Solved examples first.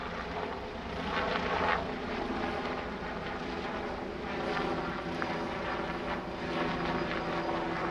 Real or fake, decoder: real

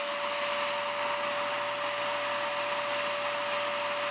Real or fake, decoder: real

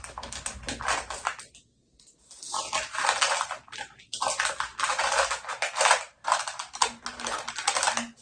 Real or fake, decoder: real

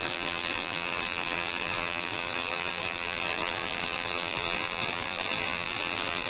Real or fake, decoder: fake, vocoder, BigVGAN v2